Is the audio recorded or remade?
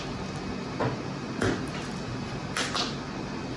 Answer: recorded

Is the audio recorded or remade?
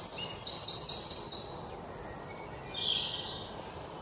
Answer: recorded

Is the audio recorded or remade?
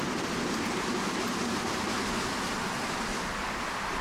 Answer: recorded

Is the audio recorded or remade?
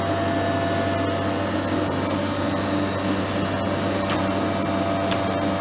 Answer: recorded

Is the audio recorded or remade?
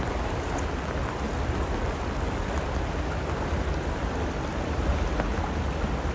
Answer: recorded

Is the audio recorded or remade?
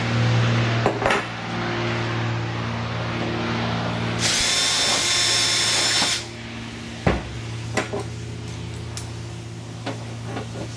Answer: recorded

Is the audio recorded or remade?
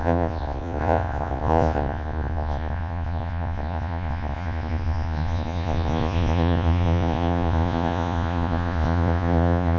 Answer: remade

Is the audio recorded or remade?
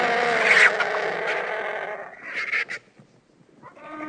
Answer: recorded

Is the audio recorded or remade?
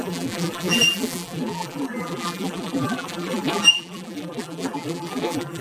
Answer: remade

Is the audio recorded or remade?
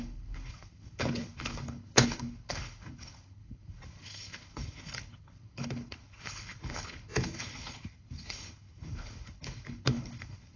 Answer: remade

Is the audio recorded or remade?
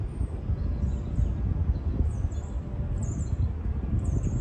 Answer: recorded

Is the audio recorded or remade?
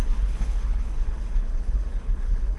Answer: remade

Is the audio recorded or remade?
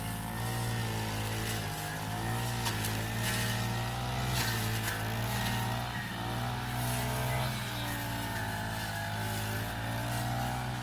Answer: recorded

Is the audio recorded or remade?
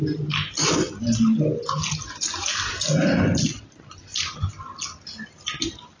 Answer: recorded